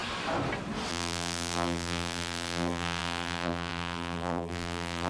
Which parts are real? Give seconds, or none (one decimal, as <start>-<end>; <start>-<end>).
0.0-0.9